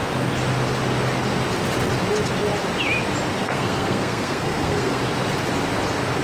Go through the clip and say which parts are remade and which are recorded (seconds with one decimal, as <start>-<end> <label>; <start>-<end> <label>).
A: 0.0-3.4 recorded; 3.4-5.0 remade; 5.0-6.2 recorded